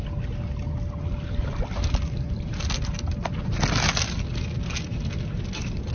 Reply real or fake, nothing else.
real